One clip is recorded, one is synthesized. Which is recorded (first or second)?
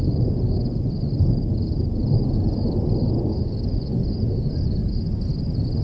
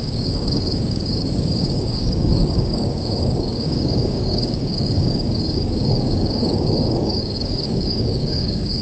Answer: first